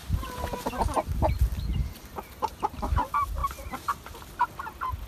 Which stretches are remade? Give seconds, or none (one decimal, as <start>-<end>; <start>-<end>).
1.7-3.0